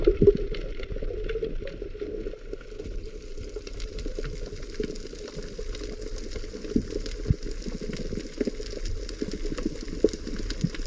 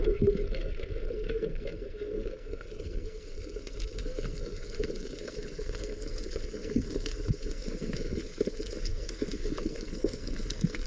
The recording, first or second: first